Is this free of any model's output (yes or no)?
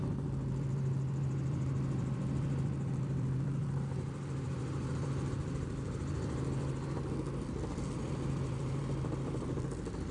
no